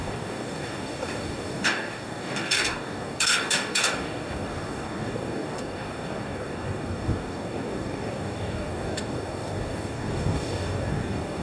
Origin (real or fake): fake